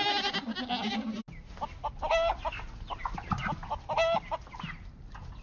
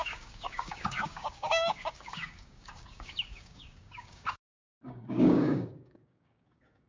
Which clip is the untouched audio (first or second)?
first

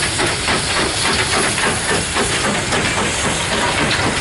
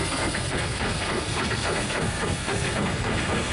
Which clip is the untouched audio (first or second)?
first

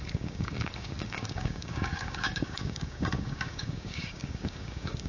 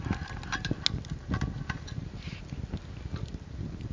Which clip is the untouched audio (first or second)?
second